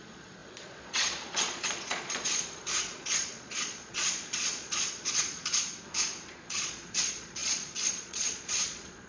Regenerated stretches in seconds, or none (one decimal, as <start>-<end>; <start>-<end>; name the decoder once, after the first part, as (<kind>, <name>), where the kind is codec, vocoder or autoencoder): 0.0-5.4 (vocoder, Vocos); 6.3-9.1